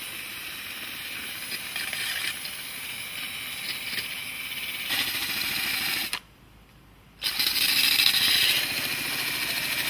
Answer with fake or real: real